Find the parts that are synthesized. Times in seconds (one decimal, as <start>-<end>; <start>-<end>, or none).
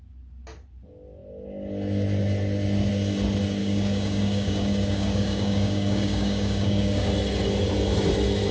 3.6-7.1